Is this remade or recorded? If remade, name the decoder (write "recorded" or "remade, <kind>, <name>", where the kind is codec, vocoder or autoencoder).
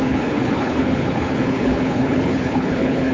remade, codec, HILCodec